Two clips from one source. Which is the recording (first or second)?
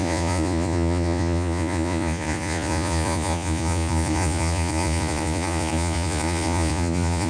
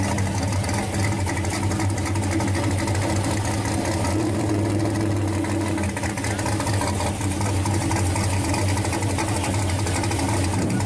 second